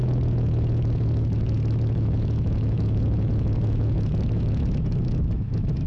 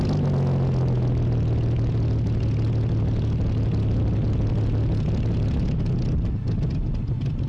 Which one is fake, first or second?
first